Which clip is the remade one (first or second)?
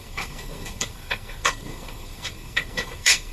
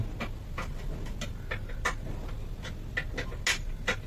first